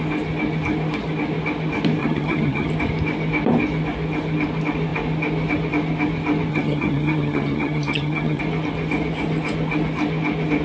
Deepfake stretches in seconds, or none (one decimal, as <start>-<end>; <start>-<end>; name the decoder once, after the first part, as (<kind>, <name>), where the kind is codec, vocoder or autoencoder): 2.0-2.7 (vocoder, HiFi-GAN); 6.5-8.4